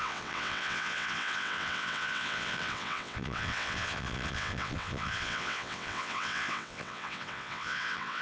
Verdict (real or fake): fake